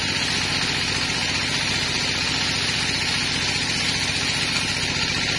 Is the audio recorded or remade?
recorded